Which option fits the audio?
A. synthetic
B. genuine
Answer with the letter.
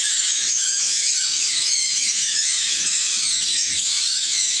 A